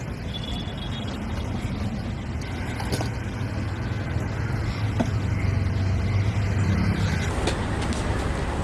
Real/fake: real